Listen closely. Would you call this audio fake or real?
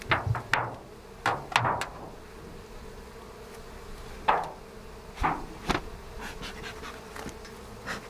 real